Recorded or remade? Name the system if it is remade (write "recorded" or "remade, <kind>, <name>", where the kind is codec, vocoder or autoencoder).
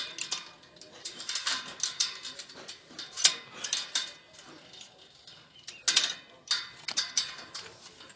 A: recorded